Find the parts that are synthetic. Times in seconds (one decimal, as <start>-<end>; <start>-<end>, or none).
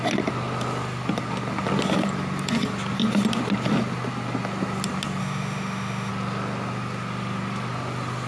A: 5.2-6.1